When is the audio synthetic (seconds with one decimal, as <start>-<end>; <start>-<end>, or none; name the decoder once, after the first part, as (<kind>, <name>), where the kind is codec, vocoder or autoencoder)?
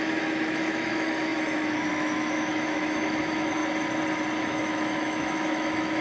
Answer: 0.0-3.6 (autoencoder, DAC-VAE); 4.4-6.0